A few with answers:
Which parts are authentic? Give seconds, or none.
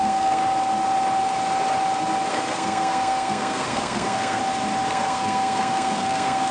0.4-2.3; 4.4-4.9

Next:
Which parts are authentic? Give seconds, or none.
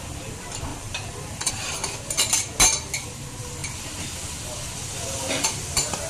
0.0-0.7; 1.5-6.1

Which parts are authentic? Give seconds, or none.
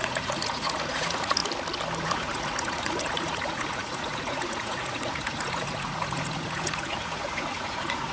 1.4-2.0